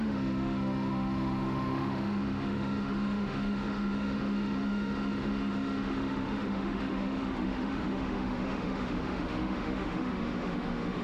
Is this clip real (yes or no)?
no